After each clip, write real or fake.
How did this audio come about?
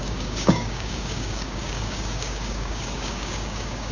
fake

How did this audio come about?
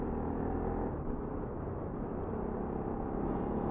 real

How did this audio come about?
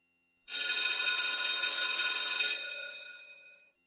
fake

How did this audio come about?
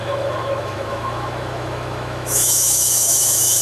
fake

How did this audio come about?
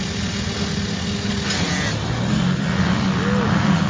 real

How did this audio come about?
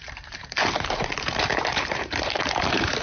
fake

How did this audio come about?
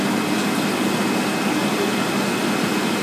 real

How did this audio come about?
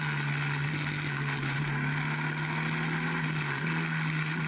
real